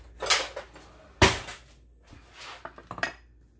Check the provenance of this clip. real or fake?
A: real